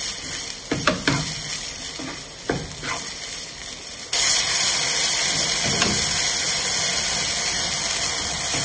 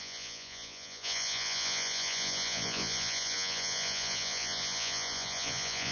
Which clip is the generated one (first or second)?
second